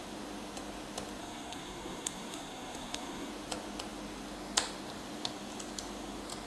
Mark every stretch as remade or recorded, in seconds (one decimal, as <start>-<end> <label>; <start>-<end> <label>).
0.0-1.2 recorded; 1.2-3.3 remade; 3.3-6.5 recorded